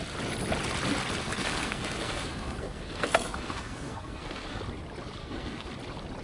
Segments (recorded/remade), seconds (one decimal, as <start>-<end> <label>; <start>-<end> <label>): 0.0-1.2 recorded; 1.2-4.6 remade; 4.6-5.2 recorded; 5.2-5.7 remade; 5.7-6.2 recorded